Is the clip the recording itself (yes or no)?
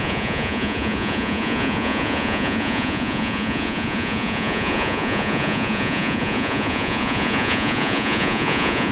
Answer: no